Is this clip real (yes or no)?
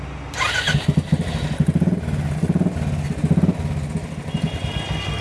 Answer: yes